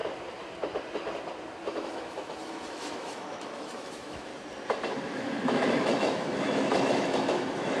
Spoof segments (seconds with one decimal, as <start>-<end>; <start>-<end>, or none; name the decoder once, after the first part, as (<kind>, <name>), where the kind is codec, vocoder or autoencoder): 1.7-4.3 (autoencoder, DAC-VAE); 5.1-7.8